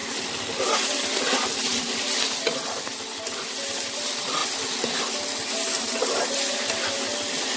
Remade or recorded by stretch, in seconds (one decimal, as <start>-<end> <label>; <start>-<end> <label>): 0.0-1.8 remade; 1.8-7.6 recorded